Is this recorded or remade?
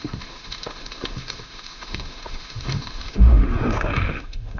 remade